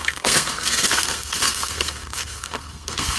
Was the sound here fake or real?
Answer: fake